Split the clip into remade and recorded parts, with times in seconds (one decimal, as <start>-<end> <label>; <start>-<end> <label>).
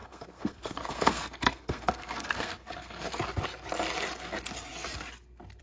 0.0-3.2 remade; 3.2-5.6 recorded